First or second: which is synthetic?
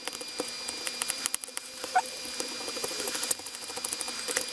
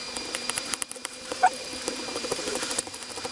second